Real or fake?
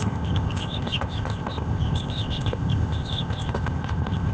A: fake